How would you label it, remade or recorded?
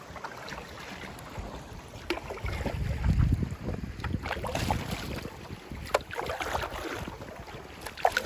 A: recorded